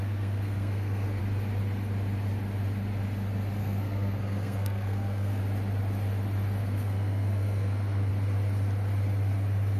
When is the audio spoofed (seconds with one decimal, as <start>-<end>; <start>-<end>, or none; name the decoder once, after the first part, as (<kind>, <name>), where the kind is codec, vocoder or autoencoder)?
0.0-1.2 (codec, SNAC); 3.6-5.4; 6.6-8.1